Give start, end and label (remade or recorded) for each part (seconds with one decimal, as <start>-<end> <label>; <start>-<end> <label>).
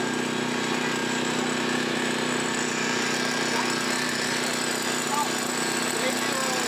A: 0.0-6.7 recorded